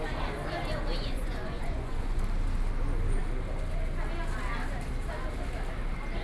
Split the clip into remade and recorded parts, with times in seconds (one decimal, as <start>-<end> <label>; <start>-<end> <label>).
0.0-1.0 recorded; 1.0-2.2 remade; 2.2-6.2 recorded